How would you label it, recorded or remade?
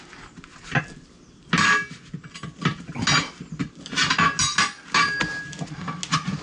recorded